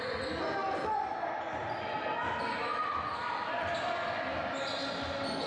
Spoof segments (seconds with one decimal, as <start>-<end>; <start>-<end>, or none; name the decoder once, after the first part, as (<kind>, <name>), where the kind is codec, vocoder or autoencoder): none